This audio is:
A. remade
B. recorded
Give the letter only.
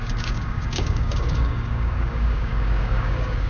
A